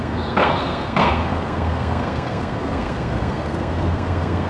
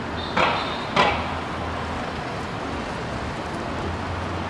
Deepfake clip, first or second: first